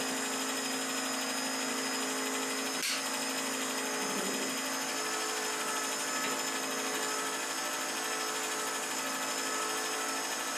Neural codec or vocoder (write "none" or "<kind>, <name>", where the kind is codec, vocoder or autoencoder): none